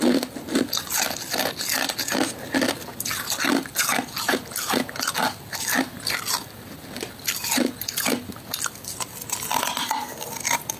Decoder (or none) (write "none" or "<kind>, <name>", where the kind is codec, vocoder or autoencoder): none